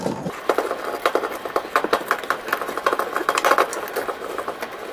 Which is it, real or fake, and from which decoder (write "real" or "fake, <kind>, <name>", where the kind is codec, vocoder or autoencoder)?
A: real